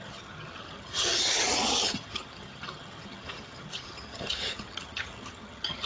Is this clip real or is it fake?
fake